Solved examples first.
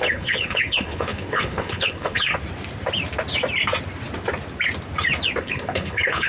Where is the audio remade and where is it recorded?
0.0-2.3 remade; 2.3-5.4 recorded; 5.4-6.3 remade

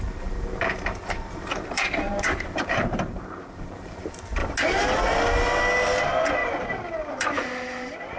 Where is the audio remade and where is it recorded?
0.0-4.4 remade; 4.4-6.0 recorded; 6.0-6.4 remade; 6.4-7.1 recorded; 7.1-8.2 remade